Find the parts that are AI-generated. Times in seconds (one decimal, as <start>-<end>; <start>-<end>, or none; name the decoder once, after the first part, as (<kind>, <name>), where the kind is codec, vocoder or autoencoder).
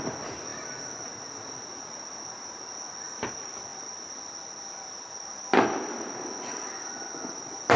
none